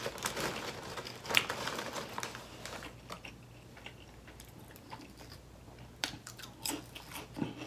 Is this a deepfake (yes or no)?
no